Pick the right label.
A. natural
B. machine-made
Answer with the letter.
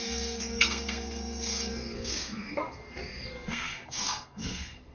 B